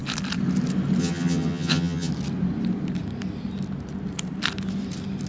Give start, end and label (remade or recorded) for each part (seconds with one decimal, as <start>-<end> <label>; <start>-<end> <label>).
0.0-1.0 recorded; 1.0-2.1 remade; 2.1-5.3 recorded